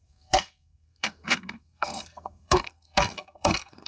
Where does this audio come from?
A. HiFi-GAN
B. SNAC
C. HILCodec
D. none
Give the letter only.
B